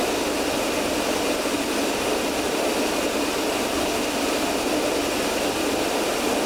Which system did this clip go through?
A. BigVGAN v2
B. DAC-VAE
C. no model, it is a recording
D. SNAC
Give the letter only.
C